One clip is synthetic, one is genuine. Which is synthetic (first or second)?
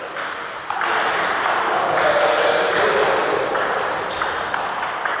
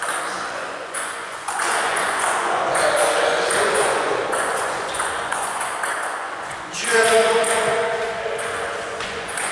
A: second